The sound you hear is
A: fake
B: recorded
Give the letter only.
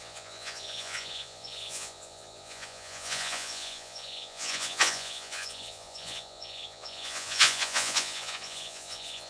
A